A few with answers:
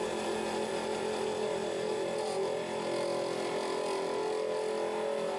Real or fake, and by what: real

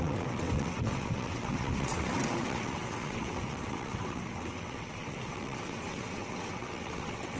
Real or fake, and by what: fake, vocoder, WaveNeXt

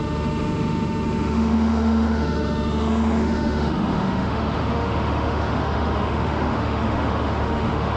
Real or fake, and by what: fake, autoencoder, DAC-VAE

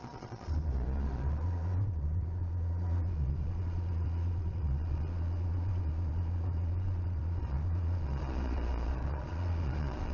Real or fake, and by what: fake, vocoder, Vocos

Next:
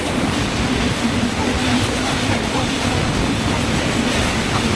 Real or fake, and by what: real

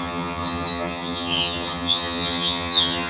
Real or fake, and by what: fake, vocoder, HiFi-GAN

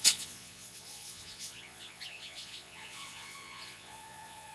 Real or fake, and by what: fake, vocoder, Vocos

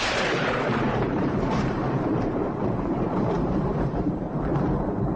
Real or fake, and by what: fake, vocoder, BigVGAN v2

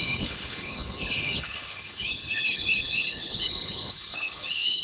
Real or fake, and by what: fake, codec, HILCodec